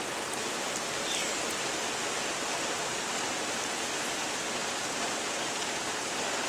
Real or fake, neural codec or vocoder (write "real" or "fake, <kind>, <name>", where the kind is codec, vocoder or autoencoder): real